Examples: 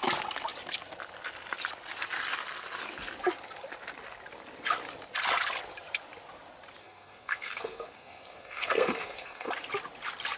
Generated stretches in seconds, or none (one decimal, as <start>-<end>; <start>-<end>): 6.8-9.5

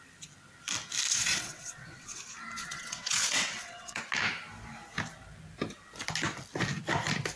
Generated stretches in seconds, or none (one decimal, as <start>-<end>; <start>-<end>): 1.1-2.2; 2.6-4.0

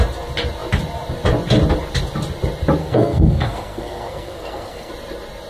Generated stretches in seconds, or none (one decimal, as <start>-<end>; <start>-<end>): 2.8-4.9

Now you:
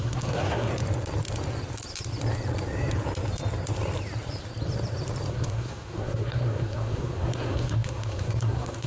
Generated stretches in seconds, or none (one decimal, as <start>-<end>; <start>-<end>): 0.0-0.7; 5.3-8.9